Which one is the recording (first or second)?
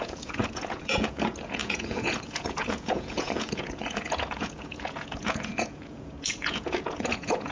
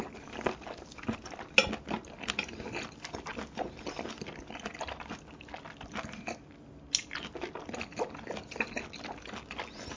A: second